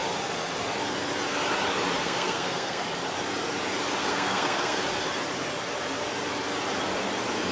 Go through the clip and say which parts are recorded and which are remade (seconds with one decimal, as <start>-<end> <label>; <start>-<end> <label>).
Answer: 0.0-2.0 recorded; 2.0-2.8 remade; 2.8-4.1 recorded; 4.1-4.8 remade; 4.8-7.5 recorded